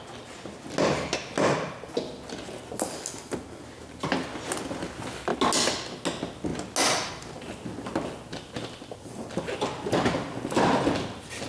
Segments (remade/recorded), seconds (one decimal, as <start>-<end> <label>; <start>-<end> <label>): 0.0-11.5 recorded